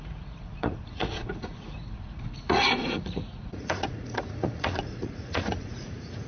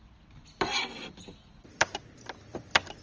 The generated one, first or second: first